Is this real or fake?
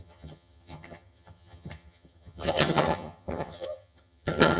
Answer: fake